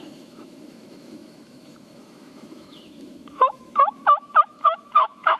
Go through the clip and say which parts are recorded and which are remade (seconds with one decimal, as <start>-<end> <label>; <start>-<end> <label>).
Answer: 0.0-5.4 remade